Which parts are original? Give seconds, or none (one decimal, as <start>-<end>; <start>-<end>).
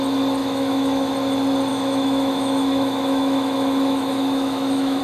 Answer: 0.0-0.4; 1.1-1.7